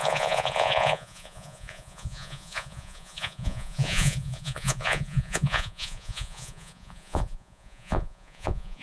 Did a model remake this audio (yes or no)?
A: yes